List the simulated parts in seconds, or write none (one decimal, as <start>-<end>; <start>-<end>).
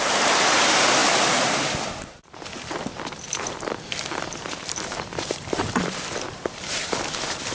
1.0-1.9; 2.9-7.1